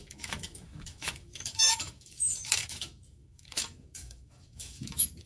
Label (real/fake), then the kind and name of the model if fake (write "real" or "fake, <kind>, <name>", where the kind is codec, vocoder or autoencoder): fake, autoencoder, DAC-VAE